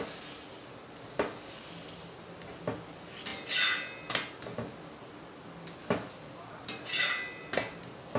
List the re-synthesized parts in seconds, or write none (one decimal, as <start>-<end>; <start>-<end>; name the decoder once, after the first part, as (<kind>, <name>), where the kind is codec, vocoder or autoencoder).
none